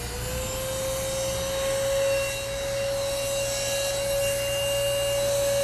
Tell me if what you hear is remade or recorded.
recorded